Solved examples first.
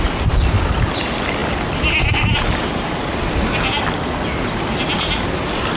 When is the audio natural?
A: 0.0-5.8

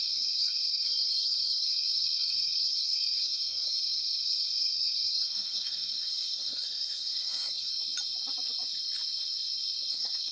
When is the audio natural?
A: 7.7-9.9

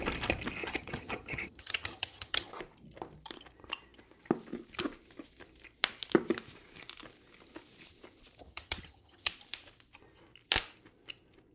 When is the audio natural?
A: 0.0-0.6; 2.5-8.4; 9.3-11.5

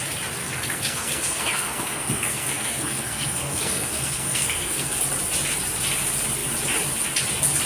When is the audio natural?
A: 0.0-0.4; 5.0-7.7

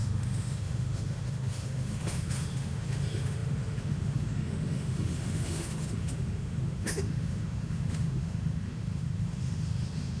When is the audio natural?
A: none

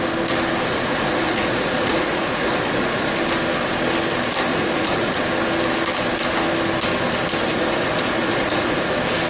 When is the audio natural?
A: 0.0-0.7; 3.1-4.5; 5.2-7.4; 8.9-9.3

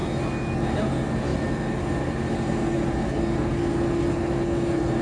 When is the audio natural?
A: 0.0-5.0